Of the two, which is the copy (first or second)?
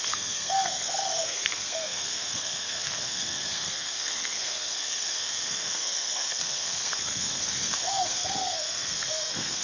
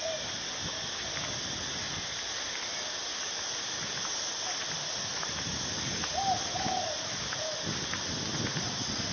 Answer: first